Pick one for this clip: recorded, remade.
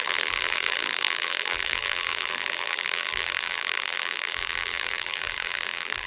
remade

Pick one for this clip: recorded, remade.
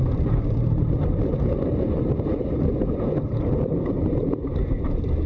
remade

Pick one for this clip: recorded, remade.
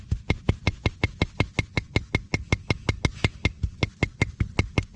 recorded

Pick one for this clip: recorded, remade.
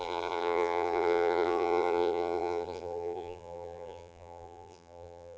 remade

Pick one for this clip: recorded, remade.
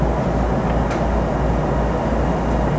recorded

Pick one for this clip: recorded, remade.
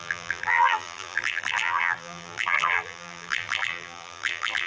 remade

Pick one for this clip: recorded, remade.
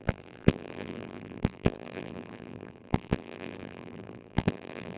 remade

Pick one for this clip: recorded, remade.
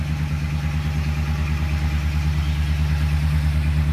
recorded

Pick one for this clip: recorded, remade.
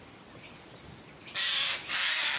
recorded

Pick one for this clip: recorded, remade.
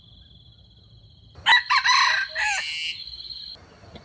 recorded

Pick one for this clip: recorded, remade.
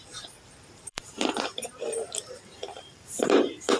remade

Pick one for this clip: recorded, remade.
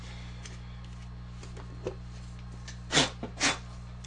recorded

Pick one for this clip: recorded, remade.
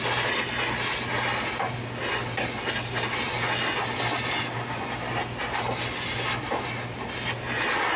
recorded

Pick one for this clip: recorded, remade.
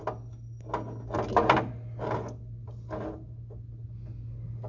recorded